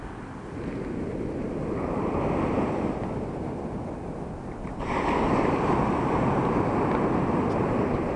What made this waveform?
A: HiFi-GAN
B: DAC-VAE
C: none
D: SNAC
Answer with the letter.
C